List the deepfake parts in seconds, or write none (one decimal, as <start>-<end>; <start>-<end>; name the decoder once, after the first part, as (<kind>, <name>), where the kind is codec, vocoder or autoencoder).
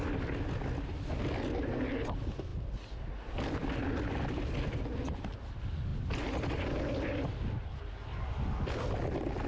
none